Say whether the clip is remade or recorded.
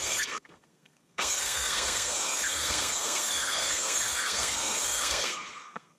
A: remade